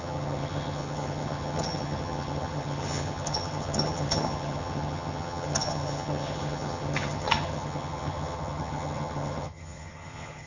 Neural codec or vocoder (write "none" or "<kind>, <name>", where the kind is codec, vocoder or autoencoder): vocoder, HiFi-GAN